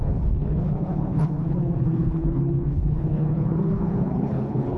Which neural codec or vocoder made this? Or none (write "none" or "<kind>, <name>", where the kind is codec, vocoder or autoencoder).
codec, HILCodec